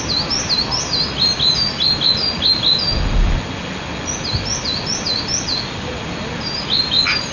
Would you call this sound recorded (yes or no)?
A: yes